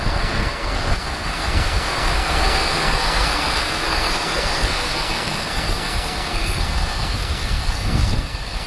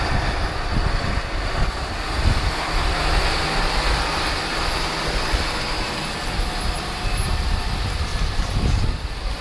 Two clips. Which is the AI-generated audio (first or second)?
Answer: first